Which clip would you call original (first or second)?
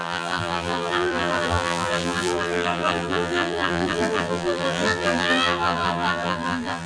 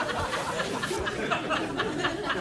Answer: second